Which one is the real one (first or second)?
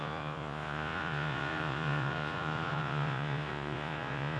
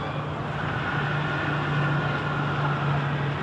second